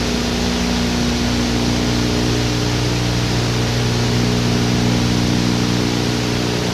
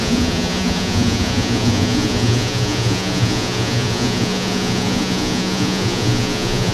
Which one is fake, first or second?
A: second